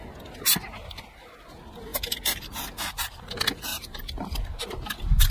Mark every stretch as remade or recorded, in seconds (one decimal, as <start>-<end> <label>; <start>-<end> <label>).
0.0-3.7 recorded; 3.7-4.4 remade; 4.4-5.3 recorded